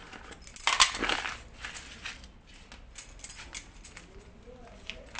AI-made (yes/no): no